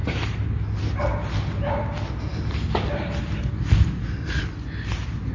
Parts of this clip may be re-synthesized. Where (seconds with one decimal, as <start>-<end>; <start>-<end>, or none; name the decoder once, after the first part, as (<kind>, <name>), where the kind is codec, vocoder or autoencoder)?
none